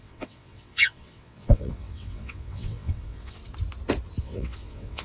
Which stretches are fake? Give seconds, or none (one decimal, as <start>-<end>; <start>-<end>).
0.0-3.4; 4.2-5.0